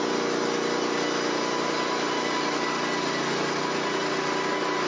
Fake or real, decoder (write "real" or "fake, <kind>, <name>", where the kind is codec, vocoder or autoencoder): real